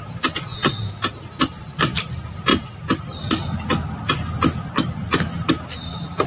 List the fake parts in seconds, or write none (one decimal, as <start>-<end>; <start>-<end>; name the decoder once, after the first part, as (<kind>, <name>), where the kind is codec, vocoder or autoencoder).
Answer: 0.5-1.1 (vocoder, Vocos)